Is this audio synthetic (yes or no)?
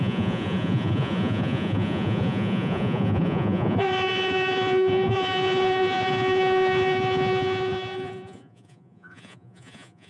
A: yes